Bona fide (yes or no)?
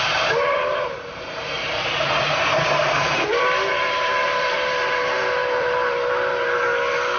no